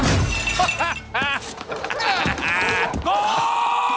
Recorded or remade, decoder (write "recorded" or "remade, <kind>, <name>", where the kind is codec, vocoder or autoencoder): recorded